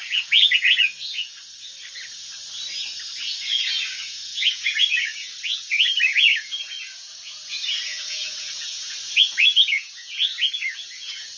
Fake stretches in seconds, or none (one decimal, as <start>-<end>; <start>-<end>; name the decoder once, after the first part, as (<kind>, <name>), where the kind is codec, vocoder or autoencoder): 0.0-1.4 (vocoder, Vocos); 3.2-11.4

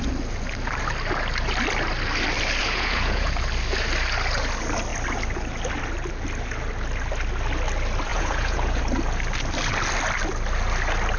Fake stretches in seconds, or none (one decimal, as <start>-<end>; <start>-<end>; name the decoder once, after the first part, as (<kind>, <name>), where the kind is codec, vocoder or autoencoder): 2.6-3.3 (vocoder, Vocos); 8.1-8.8